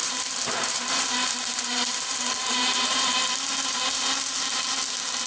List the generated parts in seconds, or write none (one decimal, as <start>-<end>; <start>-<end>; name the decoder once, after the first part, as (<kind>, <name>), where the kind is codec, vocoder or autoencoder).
0.0-3.2 (vocoder, BigVGAN v2)